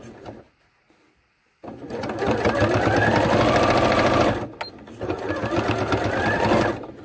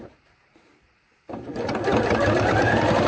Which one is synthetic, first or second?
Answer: second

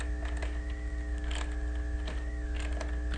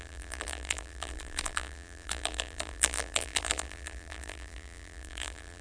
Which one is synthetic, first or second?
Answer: second